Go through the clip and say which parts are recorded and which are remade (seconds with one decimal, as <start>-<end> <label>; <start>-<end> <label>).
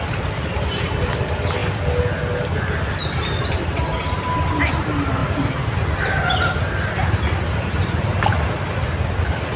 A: 0.0-9.6 recorded